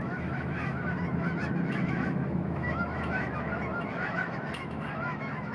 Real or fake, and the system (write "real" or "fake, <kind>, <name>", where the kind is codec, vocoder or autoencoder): fake, autoencoder, DAC-VAE